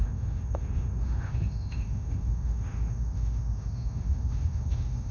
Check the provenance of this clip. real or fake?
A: fake